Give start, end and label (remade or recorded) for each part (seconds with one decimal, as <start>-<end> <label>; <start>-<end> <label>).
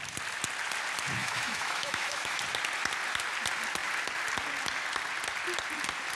0.0-1.2 recorded; 1.2-2.4 remade; 2.4-6.2 recorded